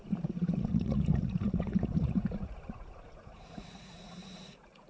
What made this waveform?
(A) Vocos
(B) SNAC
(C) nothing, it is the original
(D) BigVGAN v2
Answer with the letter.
A